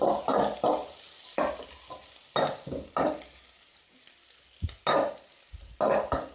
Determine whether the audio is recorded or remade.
recorded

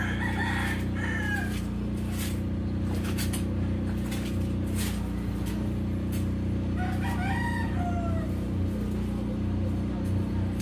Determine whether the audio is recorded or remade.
recorded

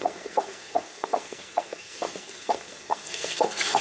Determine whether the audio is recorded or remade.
remade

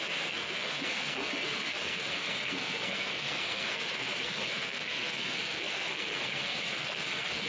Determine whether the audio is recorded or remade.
remade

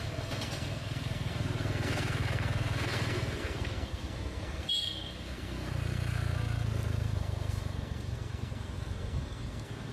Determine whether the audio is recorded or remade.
remade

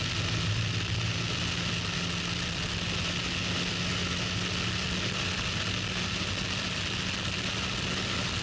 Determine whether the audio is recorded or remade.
recorded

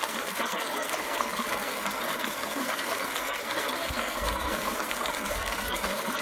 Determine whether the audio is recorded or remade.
remade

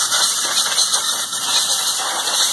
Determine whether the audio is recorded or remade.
recorded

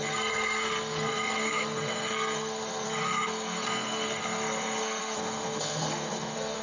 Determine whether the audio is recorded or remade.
remade